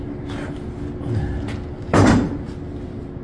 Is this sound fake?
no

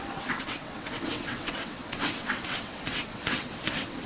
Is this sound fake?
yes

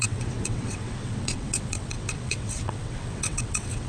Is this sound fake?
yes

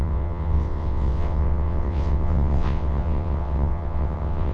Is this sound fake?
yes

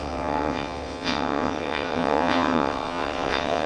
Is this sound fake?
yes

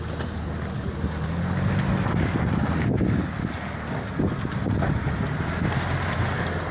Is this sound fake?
no